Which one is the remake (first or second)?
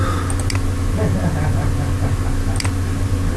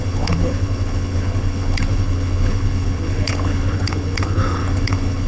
second